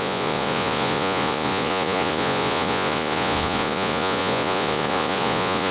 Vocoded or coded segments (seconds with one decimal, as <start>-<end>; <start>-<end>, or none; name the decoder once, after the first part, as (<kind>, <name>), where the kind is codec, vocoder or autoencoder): 0.0-5.7 (vocoder, Vocos)